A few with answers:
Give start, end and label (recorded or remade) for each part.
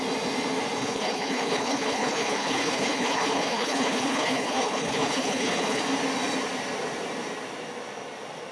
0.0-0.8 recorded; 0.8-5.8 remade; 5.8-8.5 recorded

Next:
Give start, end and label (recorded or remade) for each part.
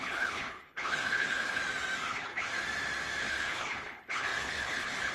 0.0-1.6 remade; 1.6-2.1 recorded; 2.1-2.5 remade; 2.5-3.2 recorded; 3.2-5.1 remade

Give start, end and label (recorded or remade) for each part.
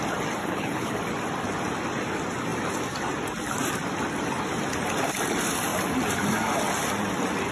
0.0-0.4 recorded; 0.4-1.0 remade; 1.0-7.5 recorded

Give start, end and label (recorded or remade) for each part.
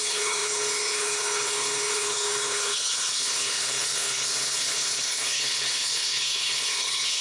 0.0-7.2 remade